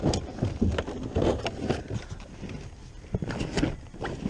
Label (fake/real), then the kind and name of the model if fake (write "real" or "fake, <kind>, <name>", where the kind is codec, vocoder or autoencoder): real